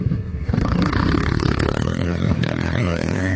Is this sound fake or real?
fake